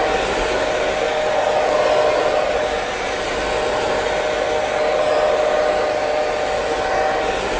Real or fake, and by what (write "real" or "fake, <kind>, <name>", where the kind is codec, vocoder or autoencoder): real